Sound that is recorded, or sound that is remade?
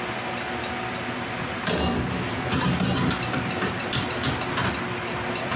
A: recorded